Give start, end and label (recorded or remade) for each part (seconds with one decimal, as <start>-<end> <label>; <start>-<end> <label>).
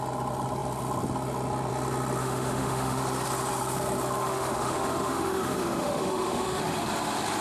0.0-2.2 recorded; 2.2-3.0 remade; 3.0-4.2 recorded; 4.2-6.6 remade; 6.6-7.4 recorded